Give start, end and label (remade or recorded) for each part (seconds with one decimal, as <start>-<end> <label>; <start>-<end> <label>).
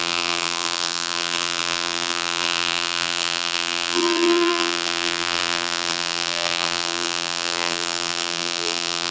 0.0-9.1 remade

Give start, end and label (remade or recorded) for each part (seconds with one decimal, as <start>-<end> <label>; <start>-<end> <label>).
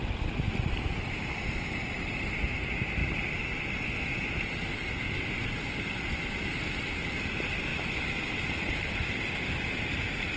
0.0-1.6 remade; 1.6-7.7 recorded; 7.7-10.4 remade